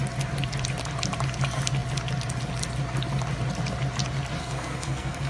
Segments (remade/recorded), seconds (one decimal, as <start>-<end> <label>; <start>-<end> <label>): 0.0-4.4 recorded; 4.4-5.3 remade